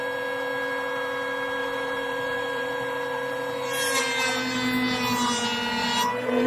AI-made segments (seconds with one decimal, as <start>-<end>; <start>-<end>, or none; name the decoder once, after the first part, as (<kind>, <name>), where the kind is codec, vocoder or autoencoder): 1.6-4.0 (vocoder, BigVGAN v2); 5.8-6.5